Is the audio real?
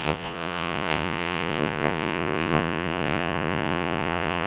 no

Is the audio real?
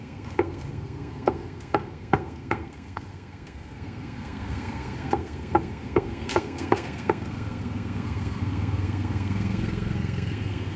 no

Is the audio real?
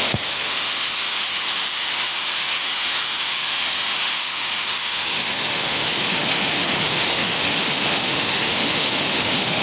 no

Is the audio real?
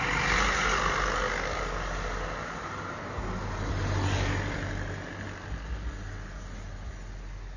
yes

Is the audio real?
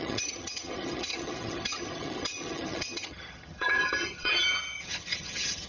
no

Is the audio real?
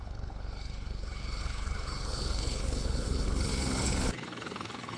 no